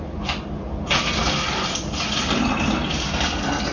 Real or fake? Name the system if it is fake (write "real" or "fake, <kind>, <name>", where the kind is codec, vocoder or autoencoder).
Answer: real